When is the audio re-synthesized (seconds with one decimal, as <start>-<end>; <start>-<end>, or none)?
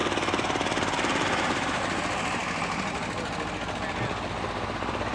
0.0-1.8